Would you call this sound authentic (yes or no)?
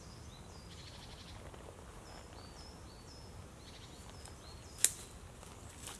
yes